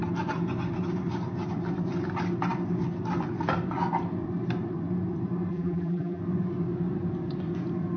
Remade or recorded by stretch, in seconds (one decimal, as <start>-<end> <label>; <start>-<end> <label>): 0.0-5.5 recorded; 5.5-6.2 remade; 6.2-8.0 recorded